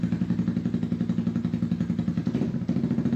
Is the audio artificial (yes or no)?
no